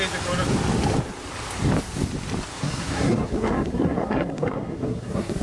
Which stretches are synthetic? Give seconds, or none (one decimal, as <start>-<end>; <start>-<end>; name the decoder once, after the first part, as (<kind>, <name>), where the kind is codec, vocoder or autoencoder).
2.5-5.4 (codec, SNAC)